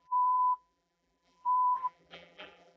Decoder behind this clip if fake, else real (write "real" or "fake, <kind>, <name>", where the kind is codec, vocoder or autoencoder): fake, vocoder, BigVGAN v2